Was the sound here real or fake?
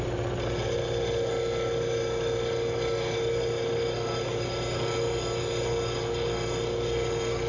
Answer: real